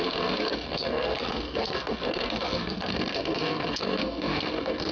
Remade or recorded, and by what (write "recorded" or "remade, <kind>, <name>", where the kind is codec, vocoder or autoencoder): remade, codec, SNAC